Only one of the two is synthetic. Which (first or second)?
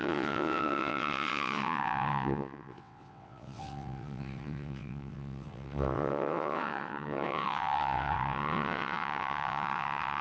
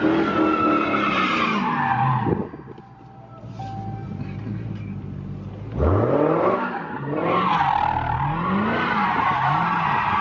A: first